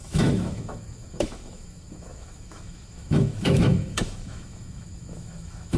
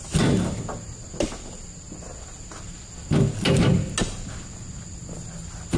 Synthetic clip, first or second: first